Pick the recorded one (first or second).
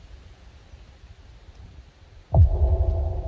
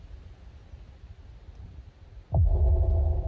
second